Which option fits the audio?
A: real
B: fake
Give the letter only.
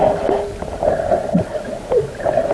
A